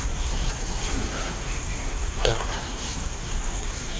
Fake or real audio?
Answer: fake